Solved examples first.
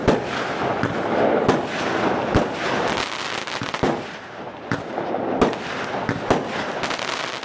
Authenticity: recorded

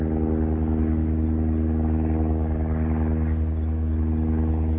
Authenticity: recorded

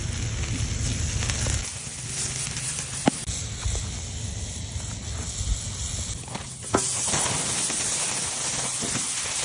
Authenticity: recorded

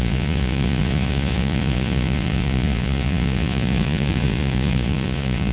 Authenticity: remade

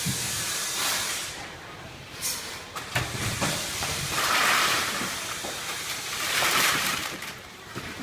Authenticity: remade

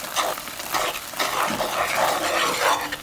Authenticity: recorded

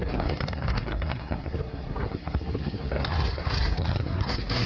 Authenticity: remade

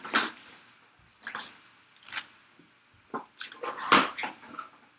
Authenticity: recorded